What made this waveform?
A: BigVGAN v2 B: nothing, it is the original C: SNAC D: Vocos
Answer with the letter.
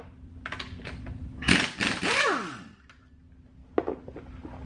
B